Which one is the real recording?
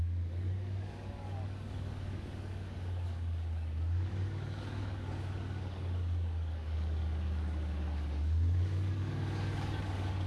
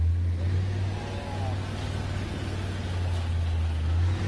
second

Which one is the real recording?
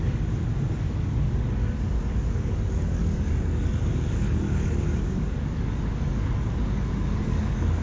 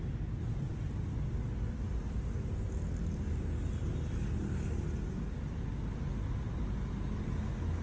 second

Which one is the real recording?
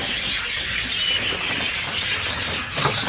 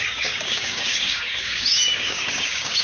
first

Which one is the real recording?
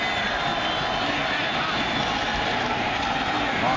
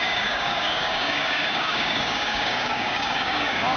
first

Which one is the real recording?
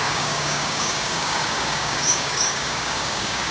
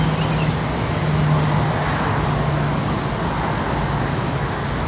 second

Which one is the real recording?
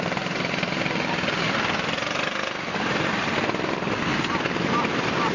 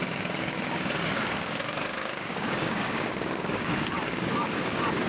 first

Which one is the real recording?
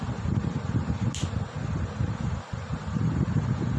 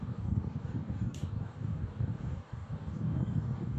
first